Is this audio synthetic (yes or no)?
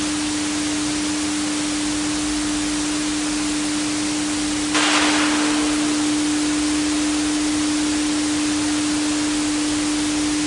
no